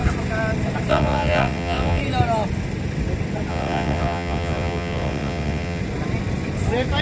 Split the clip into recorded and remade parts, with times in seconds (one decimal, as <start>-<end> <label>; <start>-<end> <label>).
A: 0.0-0.9 recorded; 0.9-2.0 remade; 2.0-3.5 recorded; 3.5-5.8 remade; 5.8-7.0 recorded

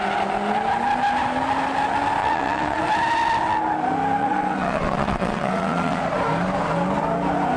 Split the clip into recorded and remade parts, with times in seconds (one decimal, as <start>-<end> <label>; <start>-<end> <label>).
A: 0.0-2.2 recorded; 2.2-2.8 remade; 2.8-4.2 recorded; 4.2-6.0 remade; 6.0-7.6 recorded

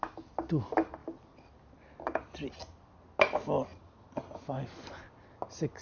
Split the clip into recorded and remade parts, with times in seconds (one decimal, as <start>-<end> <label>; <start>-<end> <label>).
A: 0.0-5.8 recorded

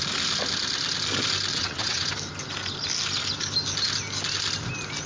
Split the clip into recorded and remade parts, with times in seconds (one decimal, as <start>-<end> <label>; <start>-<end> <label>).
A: 0.0-1.5 recorded; 1.5-2.1 remade; 2.1-5.1 recorded